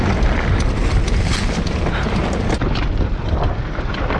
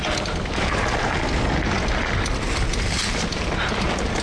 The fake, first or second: first